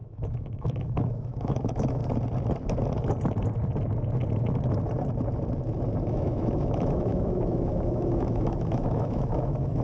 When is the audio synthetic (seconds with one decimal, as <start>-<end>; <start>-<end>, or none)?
0.0-2.0; 6.0-9.8